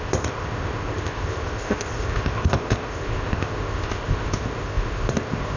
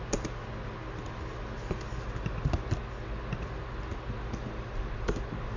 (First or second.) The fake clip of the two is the first